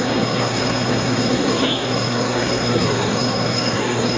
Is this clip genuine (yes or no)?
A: no